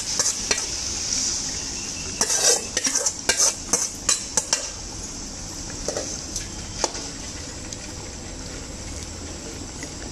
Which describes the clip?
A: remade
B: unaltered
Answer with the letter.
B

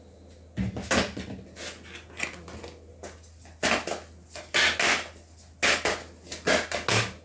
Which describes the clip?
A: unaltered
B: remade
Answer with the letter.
A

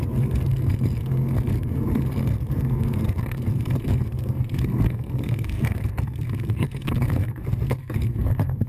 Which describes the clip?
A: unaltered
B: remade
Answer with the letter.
B